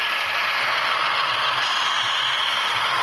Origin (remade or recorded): recorded